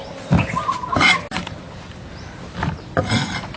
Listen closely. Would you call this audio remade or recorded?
recorded